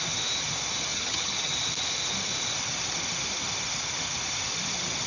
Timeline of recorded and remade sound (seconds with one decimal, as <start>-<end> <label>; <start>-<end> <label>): 0.0-0.9 recorded; 0.9-1.5 remade; 1.5-5.1 recorded